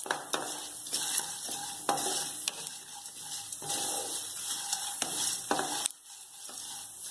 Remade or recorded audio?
recorded